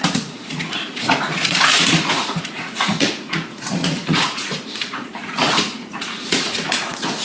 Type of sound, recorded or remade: remade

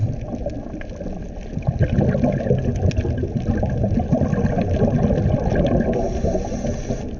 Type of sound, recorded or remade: recorded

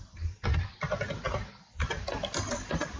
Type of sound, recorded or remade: recorded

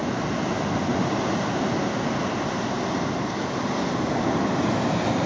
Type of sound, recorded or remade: recorded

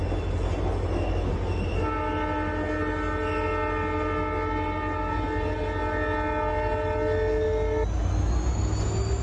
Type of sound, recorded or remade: recorded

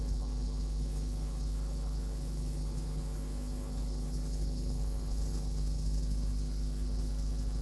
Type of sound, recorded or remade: remade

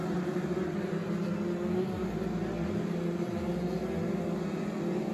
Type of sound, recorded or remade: recorded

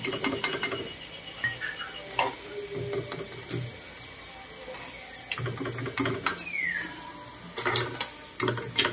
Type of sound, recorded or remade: recorded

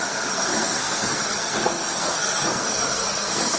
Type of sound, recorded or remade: remade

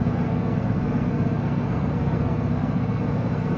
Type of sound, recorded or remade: remade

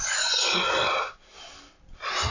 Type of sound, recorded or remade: recorded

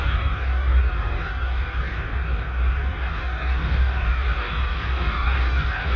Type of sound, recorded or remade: remade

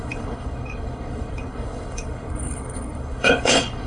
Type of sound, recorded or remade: remade